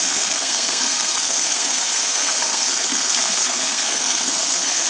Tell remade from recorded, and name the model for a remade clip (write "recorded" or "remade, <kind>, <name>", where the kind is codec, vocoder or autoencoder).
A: remade, codec, SNAC